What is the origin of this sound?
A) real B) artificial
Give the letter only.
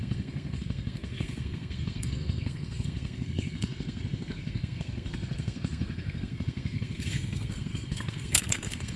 B